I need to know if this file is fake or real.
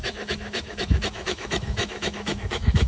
fake